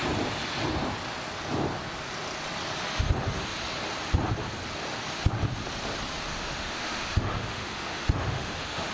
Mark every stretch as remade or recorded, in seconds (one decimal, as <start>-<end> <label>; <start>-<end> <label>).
0.0-6.3 recorded; 6.3-8.9 remade